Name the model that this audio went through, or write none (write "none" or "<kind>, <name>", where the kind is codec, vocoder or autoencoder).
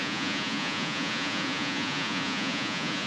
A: vocoder, Vocos